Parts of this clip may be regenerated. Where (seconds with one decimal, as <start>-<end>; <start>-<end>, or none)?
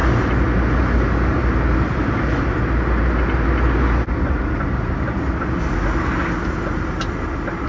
none